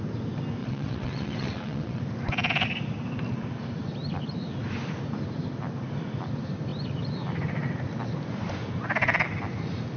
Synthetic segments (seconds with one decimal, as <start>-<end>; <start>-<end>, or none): 0.6-2.0